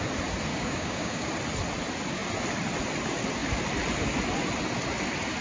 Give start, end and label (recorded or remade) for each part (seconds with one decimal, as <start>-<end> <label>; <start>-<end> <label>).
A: 0.0-0.5 recorded; 0.5-1.3 remade; 1.3-5.4 recorded